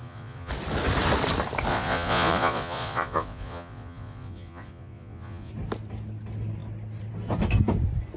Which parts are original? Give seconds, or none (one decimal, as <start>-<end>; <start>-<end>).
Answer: 0.5-1.7; 5.5-8.2